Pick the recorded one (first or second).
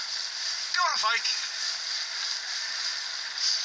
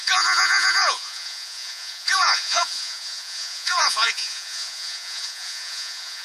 first